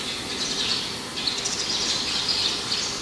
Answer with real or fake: real